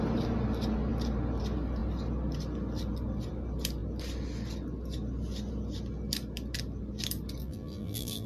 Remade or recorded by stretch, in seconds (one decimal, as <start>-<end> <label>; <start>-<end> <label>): 0.0-7.4 recorded; 7.4-8.3 remade